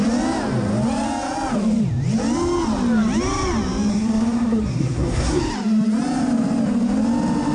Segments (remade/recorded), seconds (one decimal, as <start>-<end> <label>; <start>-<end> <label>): 0.0-3.9 recorded; 3.9-5.4 remade; 5.4-7.5 recorded